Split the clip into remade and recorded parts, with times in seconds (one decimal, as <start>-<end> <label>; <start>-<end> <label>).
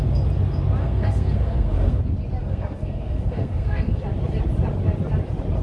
0.0-0.8 recorded; 0.8-2.0 remade; 2.0-2.4 recorded; 2.4-4.0 remade; 4.0-5.6 recorded